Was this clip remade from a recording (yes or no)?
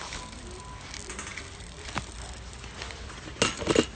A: no